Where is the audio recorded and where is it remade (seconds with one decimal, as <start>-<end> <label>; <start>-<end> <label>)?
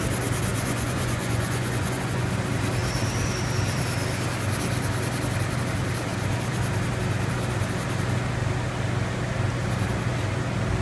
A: 0.0-0.5 recorded; 0.5-2.3 remade; 2.3-10.8 recorded